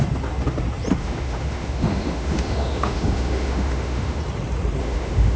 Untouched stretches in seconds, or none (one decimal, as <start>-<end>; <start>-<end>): 0.0-1.0; 4.2-4.8